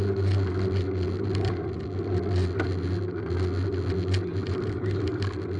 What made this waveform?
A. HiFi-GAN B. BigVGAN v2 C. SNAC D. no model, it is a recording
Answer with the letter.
D